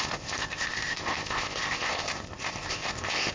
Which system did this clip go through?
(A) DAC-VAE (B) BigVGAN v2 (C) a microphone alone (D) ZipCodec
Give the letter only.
D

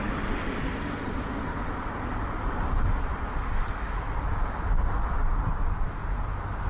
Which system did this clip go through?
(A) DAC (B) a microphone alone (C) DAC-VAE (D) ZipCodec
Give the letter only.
B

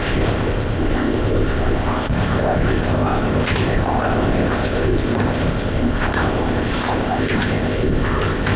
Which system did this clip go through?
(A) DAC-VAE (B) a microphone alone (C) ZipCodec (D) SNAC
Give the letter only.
C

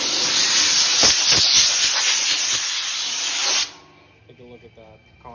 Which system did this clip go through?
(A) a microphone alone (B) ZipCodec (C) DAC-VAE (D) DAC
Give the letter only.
A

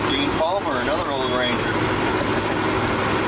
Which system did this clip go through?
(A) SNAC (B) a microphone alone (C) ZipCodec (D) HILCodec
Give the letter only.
B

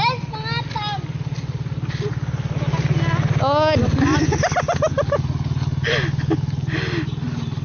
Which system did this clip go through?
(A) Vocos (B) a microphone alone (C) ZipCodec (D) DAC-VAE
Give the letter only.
B